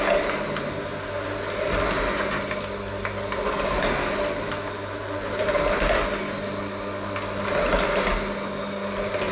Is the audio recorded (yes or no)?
yes